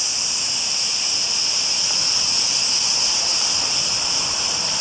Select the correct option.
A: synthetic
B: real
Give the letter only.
B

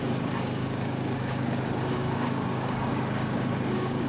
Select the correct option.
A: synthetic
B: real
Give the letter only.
A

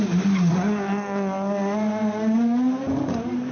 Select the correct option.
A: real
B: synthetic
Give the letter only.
A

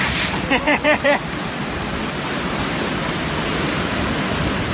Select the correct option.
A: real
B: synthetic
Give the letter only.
A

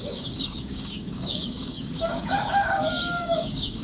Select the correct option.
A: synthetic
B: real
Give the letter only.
A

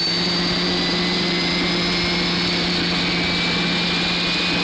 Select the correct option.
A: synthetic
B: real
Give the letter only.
B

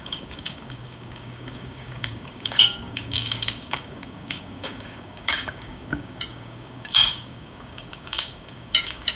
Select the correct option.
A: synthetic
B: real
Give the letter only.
A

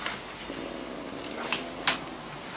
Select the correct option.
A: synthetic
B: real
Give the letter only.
B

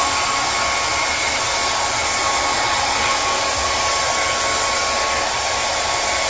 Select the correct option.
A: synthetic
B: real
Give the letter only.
B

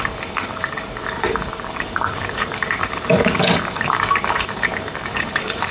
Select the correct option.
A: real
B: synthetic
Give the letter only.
B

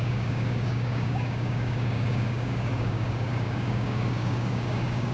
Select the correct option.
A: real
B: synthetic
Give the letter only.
B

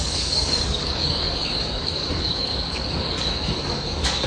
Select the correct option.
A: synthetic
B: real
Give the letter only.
A